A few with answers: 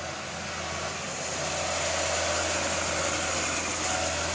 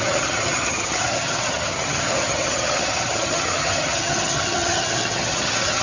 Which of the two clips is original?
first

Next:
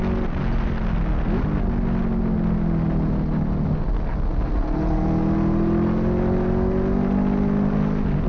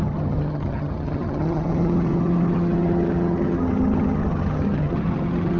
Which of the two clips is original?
first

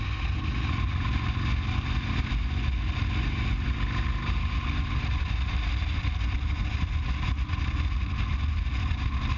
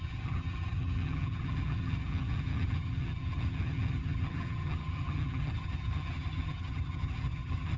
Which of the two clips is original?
first